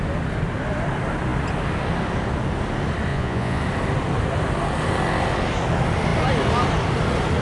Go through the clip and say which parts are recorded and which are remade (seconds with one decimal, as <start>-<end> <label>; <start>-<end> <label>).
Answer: 0.0-3.1 recorded; 3.1-3.6 remade; 3.6-7.4 recorded